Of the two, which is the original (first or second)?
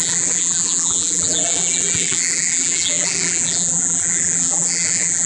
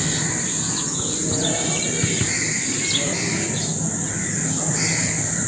second